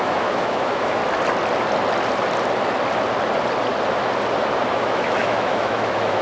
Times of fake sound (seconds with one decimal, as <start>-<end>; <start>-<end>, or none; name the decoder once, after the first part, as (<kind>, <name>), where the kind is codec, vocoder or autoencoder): 0.0-1.0 (autoencoder, DAC-VAE); 4.7-6.2